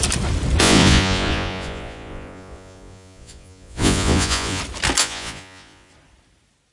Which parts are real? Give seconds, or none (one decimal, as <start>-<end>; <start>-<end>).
0.0-0.6; 4.6-5.0; 5.9-6.7